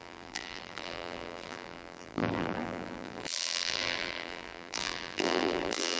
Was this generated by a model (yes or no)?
yes